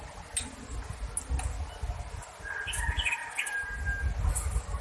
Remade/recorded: recorded